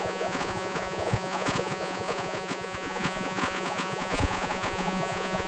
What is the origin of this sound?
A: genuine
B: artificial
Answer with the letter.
B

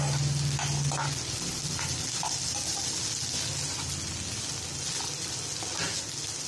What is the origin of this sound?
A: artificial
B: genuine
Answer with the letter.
B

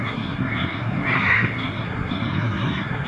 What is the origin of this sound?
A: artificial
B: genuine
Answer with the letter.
A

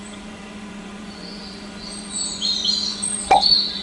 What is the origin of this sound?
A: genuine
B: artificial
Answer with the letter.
B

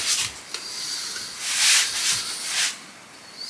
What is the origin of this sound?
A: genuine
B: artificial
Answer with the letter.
A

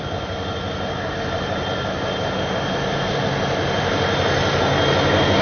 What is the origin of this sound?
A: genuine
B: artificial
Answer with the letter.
A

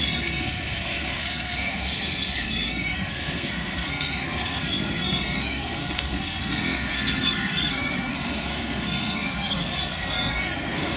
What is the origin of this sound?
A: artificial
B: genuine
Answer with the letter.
A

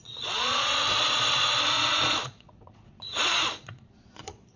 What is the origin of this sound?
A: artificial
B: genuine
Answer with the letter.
A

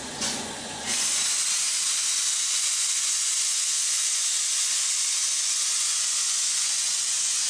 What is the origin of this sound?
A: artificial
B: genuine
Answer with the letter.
A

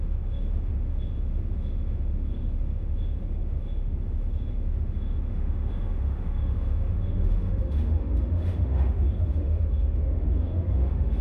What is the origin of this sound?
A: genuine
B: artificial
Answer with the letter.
B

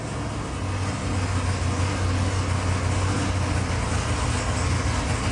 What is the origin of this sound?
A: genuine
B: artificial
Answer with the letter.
A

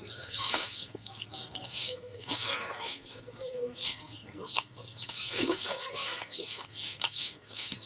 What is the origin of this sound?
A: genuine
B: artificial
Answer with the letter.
B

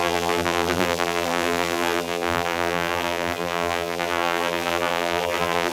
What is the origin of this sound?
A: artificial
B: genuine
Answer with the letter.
A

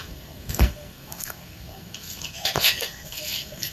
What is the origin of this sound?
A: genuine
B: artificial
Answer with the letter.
B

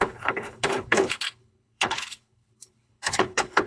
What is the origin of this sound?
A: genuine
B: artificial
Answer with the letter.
B